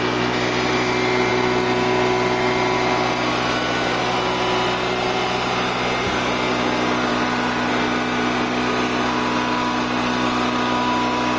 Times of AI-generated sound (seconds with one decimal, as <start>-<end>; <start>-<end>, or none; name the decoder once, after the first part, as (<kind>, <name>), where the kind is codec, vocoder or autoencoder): none